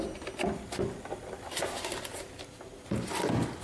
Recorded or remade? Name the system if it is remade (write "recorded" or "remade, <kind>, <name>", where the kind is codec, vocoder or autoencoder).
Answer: recorded